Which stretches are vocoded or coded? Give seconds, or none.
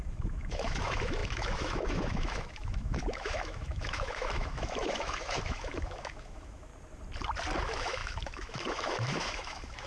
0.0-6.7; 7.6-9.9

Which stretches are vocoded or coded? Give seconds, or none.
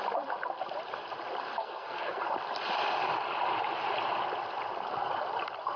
1.6-2.2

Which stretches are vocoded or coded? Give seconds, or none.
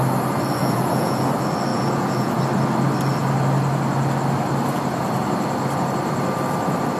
0.6-1.2; 1.7-2.4